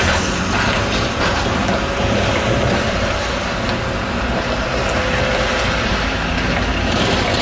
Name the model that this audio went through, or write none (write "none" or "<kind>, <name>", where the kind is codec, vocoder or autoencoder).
none